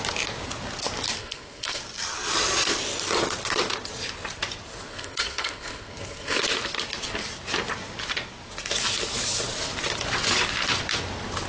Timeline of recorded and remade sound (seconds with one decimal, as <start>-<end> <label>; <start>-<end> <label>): 0.0-1.2 recorded; 1.2-1.8 remade; 1.8-4.9 recorded; 4.9-6.4 remade; 6.4-11.5 recorded